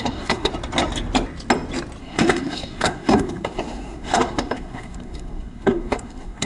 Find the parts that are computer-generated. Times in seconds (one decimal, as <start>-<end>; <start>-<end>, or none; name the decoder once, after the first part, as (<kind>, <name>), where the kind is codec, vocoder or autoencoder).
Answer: 0.0-0.5 (codec, SNAC); 2.0-6.5